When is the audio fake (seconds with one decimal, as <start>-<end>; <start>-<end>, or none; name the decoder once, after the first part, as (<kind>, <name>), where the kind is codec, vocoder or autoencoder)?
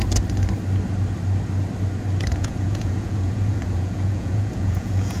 2.4-5.2 (vocoder, Vocos)